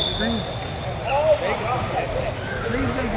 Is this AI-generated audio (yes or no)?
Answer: no